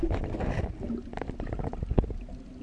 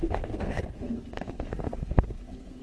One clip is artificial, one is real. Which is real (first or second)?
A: first